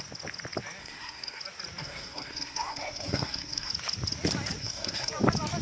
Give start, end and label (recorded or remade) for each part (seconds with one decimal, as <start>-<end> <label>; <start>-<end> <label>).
0.0-0.8 recorded; 0.8-1.4 remade; 1.4-1.8 recorded; 1.8-3.7 remade; 3.7-4.6 recorded; 4.6-5.1 remade; 5.1-5.6 recorded